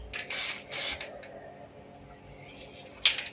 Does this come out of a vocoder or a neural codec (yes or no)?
no